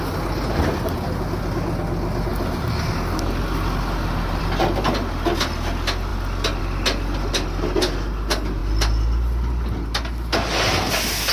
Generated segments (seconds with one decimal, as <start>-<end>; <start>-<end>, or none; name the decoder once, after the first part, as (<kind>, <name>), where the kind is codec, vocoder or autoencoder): none